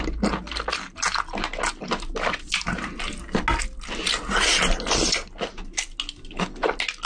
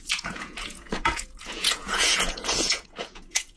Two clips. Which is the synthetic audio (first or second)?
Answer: second